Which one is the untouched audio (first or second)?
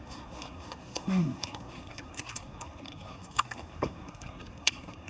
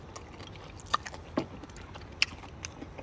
second